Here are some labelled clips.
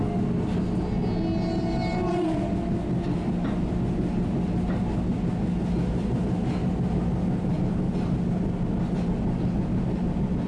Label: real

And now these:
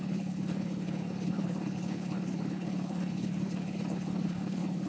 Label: fake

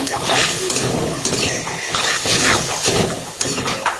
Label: fake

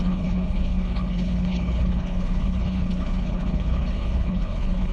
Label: fake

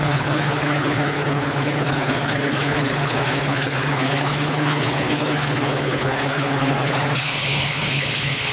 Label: fake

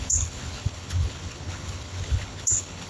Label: fake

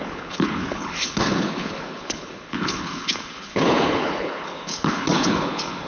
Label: fake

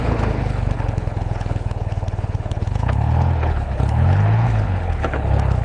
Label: fake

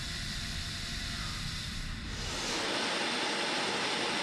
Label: real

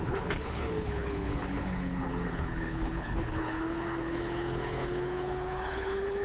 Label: fake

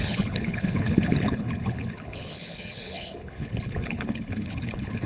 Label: fake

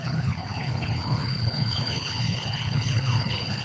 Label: fake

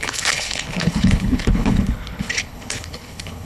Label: fake